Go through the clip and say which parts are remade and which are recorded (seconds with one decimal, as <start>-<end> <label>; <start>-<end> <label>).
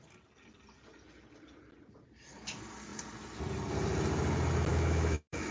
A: 0.0-4.7 recorded; 4.7-5.5 remade